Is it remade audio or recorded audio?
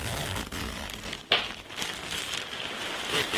recorded